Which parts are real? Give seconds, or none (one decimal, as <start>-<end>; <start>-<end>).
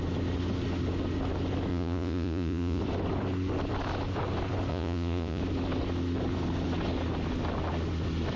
0.0-1.7; 2.8-4.7; 5.4-8.4